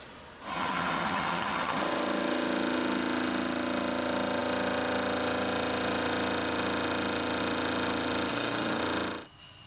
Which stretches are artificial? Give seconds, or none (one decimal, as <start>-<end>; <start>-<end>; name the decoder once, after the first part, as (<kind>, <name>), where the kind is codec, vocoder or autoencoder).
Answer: 0.5-1.8 (vocoder, HiFi-GAN); 8.3-8.8